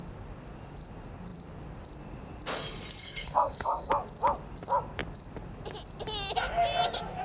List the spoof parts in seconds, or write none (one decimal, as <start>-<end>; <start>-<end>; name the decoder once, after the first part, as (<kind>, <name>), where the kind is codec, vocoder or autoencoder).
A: 3.0-3.9 (codec, SNAC)